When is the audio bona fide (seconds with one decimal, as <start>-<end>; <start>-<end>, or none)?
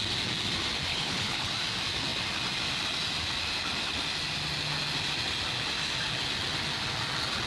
0.0-0.9; 1.5-7.5